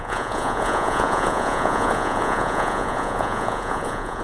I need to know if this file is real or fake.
fake